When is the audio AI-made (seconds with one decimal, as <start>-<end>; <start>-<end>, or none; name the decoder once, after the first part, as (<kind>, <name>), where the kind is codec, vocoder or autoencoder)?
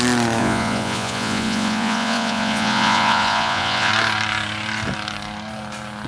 0.4-3.9 (vocoder, Vocos)